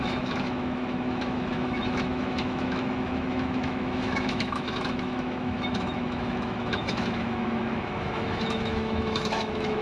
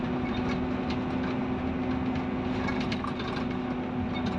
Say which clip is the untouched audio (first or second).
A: second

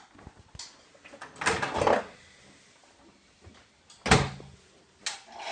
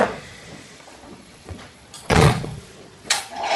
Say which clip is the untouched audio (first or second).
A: first